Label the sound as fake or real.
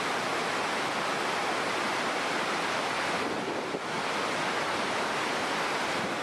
real